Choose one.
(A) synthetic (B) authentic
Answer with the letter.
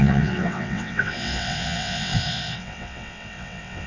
A